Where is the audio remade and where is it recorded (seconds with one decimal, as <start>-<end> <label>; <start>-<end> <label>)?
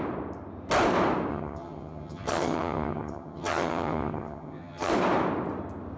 0.0-1.3 recorded; 1.3-4.9 remade; 4.9-6.0 recorded